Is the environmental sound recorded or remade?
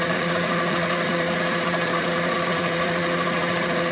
remade